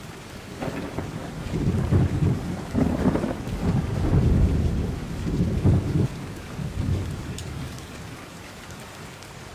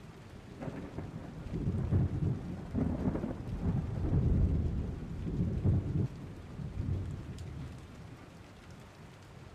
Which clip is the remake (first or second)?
first